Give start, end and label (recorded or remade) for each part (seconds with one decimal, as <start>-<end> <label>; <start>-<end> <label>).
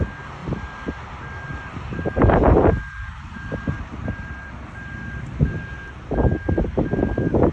0.0-0.4 recorded; 0.4-0.9 remade; 0.9-1.5 recorded; 1.5-6.0 remade; 6.0-7.5 recorded